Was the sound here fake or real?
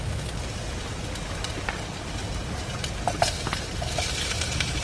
real